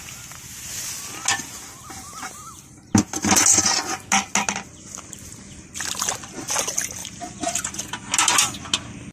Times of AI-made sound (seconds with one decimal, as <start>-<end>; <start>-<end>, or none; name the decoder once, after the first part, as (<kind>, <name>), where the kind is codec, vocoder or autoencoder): 7.0-7.8 (vocoder, BigVGAN v2)